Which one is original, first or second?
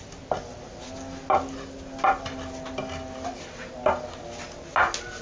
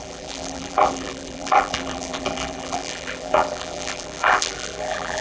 first